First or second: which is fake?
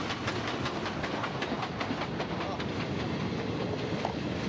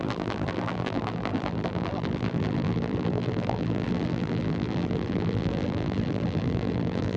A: second